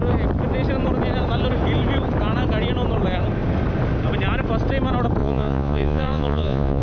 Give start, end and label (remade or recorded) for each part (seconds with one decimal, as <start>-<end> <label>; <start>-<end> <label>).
0.0-5.2 recorded; 5.2-6.8 remade